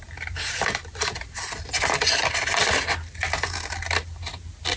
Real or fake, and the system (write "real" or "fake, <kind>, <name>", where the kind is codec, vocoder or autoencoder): real